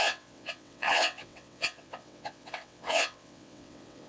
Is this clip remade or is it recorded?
remade